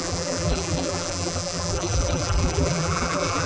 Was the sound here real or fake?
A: fake